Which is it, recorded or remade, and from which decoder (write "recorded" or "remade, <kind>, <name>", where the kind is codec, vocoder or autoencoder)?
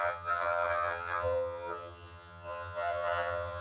remade, vocoder, HiFi-GAN